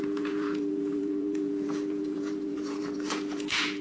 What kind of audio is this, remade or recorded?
remade